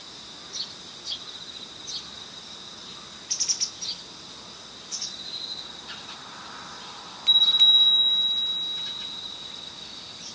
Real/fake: real